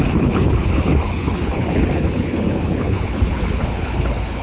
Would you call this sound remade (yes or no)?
yes